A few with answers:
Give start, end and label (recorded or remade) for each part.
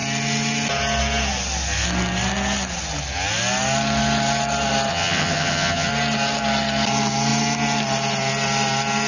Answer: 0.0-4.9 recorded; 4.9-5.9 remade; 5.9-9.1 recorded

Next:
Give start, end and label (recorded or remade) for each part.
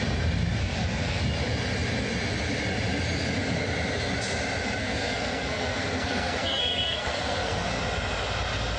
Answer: 0.0-0.6 recorded; 0.6-1.2 remade; 1.2-4.8 recorded; 4.8-7.8 remade; 7.8-8.8 recorded